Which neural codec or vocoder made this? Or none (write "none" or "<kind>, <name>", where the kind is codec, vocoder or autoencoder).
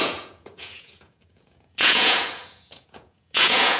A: vocoder, Vocos